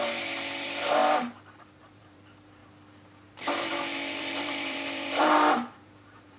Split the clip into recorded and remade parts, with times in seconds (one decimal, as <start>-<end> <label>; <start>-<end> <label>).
0.0-2.6 remade; 2.6-3.6 recorded; 3.6-6.4 remade